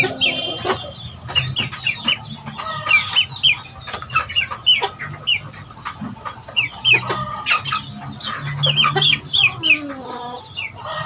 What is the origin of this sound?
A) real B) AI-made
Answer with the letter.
A